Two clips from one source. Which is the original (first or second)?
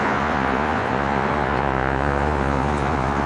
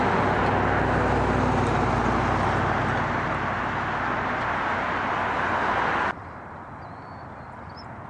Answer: second